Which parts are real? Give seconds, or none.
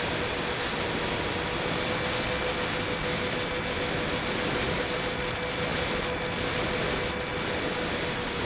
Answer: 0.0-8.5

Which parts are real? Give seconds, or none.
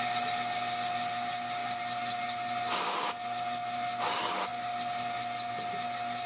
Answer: 0.0-6.3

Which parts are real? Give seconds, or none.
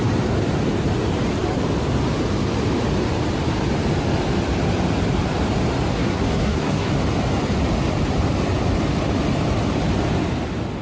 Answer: 0.0-5.9; 6.9-10.8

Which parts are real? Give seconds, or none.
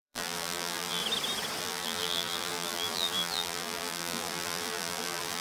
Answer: 1.0-1.6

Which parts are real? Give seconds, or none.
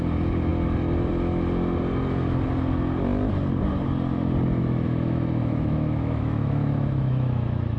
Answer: 0.0-4.6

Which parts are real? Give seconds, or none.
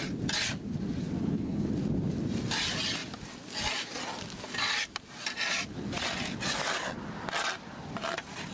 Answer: 0.0-1.2; 1.7-8.5